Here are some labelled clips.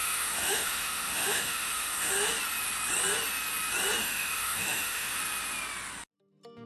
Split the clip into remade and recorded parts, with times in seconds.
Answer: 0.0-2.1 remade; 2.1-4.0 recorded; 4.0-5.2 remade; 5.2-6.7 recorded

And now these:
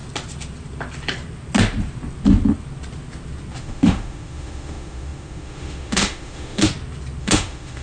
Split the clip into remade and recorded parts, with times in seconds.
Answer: 0.0-3.6 recorded; 3.6-6.7 remade; 6.7-7.2 recorded; 7.2-7.8 remade

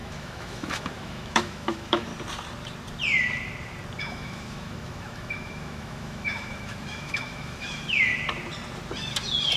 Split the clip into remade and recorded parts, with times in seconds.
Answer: 0.0-2.1 remade; 2.1-4.0 recorded; 4.0-8.1 remade; 8.1-9.6 recorded